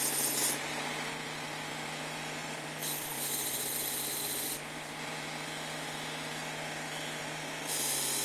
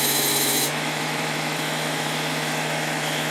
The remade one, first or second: second